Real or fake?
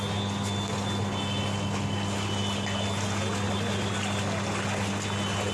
real